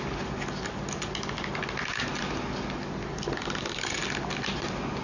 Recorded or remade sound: recorded